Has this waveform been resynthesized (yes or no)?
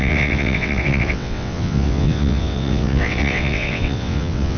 yes